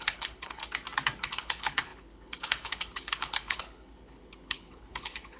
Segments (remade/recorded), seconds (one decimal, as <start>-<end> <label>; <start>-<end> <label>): 0.0-0.6 remade; 0.6-1.2 recorded; 1.2-5.4 remade